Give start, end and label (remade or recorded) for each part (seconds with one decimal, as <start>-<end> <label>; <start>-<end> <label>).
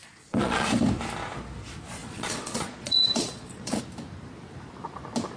0.0-0.7 remade; 0.7-2.0 recorded; 2.0-3.8 remade; 3.8-5.4 recorded